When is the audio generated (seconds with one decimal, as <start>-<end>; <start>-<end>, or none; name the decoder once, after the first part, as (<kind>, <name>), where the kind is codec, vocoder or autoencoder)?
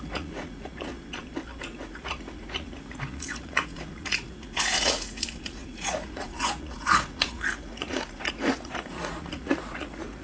0.0-0.9 (vocoder, Vocos); 1.6-10.2